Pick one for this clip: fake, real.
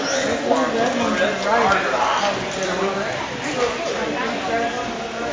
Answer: real